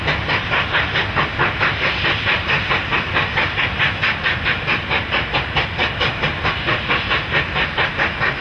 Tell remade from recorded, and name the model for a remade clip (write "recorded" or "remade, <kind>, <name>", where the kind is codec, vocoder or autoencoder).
recorded